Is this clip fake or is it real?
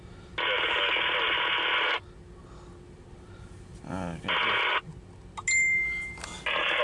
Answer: real